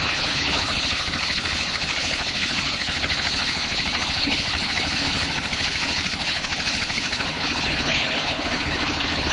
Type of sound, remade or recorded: remade